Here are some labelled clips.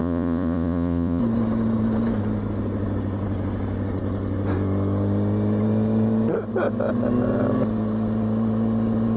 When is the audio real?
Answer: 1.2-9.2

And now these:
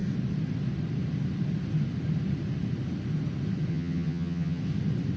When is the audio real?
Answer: 0.0-3.7; 4.6-5.2